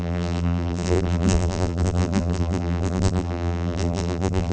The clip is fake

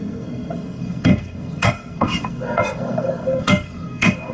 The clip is fake